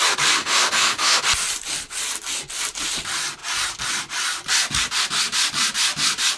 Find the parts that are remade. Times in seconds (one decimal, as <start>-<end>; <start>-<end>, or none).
0.4-1.2